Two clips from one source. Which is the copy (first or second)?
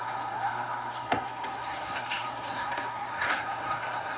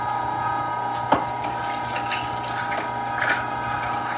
first